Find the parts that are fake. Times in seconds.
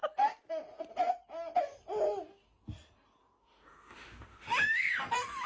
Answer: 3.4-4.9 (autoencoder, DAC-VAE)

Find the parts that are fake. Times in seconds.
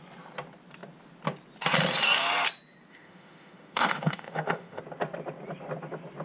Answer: 2.9-4.8 (autoencoder, DAC-VAE)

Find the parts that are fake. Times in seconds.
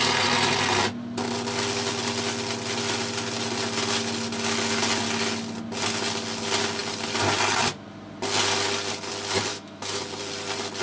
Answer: 9.5-10.0 (autoencoder, DAC-VAE)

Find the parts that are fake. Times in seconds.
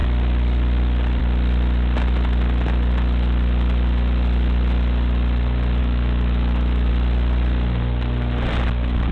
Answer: 5.8-6.9 (autoencoder, DAC-VAE)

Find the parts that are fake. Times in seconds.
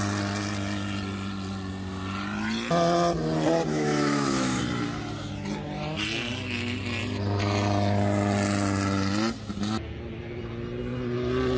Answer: 3.7-4.6 (autoencoder, DAC-VAE)